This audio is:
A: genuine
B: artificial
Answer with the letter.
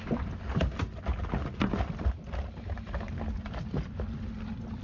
A